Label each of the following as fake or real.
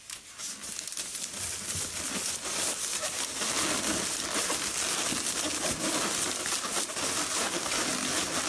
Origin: real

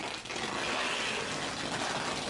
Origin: real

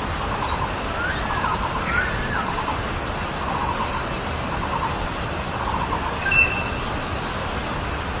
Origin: real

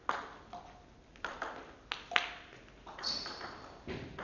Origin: real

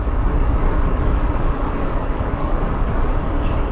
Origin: fake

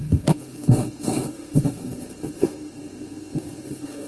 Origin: fake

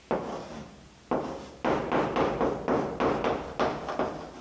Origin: real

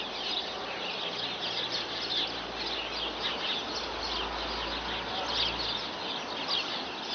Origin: real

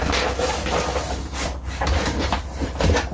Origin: real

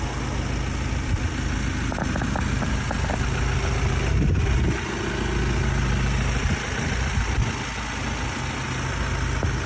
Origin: real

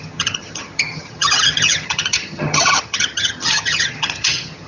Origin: fake